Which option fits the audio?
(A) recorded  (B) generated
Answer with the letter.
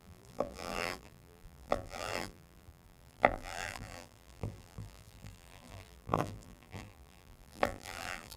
B